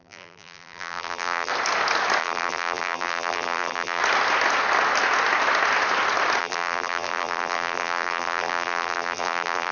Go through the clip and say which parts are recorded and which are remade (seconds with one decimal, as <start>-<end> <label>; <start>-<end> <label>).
0.0-1.5 remade; 1.5-2.2 recorded; 2.2-4.0 remade; 4.0-6.4 recorded; 6.4-9.7 remade